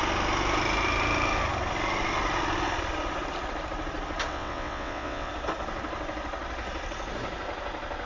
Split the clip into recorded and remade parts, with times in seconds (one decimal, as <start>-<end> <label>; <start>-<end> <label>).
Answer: 0.0-4.3 recorded; 4.3-5.3 remade; 5.3-8.1 recorded